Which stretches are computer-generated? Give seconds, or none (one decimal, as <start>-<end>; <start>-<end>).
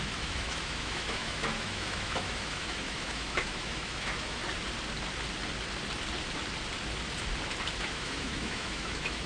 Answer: 0.0-4.4; 7.8-9.3